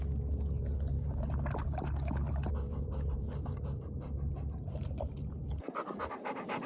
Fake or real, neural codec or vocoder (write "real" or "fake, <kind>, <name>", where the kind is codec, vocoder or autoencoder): real